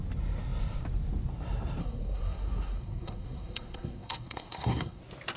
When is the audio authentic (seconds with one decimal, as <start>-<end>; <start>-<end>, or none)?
0.0-1.8; 5.0-5.4